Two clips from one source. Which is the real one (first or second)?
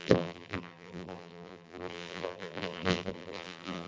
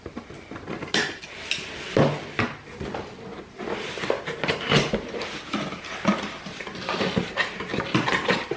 second